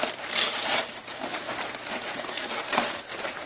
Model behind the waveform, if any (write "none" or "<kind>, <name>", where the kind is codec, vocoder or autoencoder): vocoder, BigVGAN v2